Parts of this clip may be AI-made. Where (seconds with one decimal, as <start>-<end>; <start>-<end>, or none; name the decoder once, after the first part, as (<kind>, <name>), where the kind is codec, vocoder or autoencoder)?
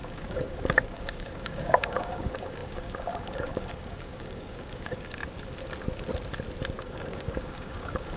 0.0-5.2 (codec, DAC); 6.8-8.2